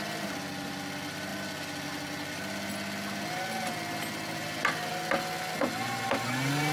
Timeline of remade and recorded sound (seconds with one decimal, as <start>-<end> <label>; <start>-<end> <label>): 0.0-6.7 recorded